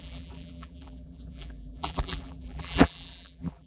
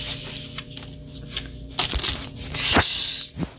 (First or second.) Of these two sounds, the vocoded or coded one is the first